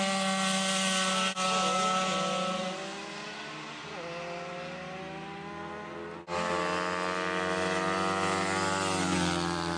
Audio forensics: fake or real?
real